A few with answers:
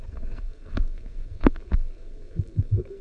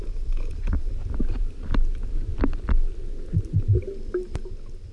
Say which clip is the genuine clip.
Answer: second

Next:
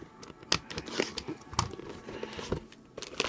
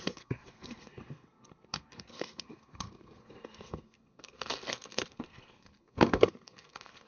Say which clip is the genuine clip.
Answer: first